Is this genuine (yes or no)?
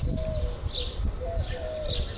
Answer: yes